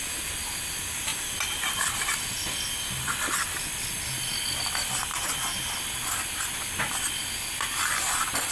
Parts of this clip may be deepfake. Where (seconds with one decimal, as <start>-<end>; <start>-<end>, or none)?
none